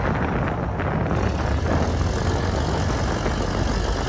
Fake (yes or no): no